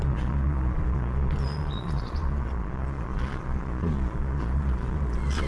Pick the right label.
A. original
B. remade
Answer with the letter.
B